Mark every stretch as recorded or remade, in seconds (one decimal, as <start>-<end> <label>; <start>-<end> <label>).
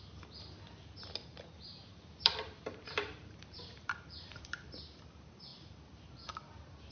0.0-1.3 recorded; 1.3-4.7 remade; 4.7-6.9 recorded